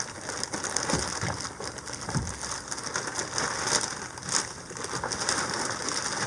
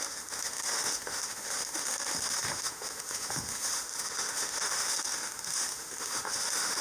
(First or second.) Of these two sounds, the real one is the first